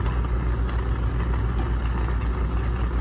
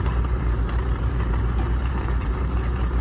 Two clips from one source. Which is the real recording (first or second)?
first